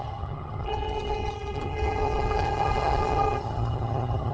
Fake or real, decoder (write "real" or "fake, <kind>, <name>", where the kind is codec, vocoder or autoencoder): fake, vocoder, HiFi-GAN